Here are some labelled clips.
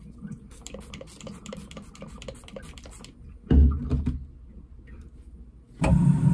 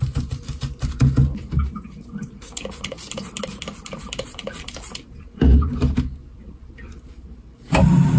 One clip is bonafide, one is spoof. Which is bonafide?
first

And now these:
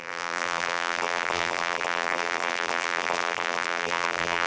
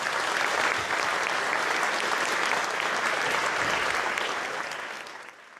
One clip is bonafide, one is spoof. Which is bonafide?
second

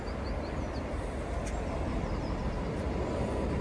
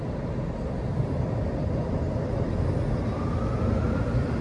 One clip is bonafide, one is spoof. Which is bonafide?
second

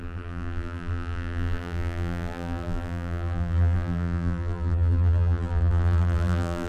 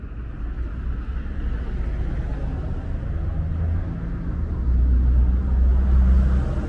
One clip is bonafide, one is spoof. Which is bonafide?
second